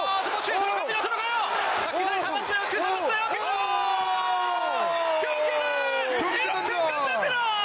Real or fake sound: real